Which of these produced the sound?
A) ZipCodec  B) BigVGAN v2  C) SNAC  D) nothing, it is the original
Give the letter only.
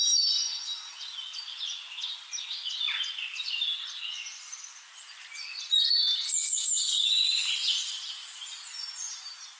D